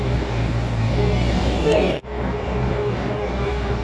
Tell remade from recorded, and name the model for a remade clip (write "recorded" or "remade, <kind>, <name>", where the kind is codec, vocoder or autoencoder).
remade, codec, DAC